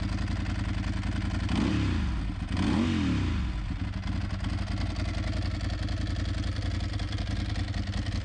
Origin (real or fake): real